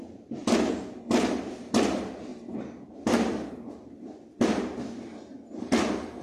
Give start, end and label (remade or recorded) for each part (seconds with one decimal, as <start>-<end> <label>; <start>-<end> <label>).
0.0-0.7 remade; 0.7-6.2 recorded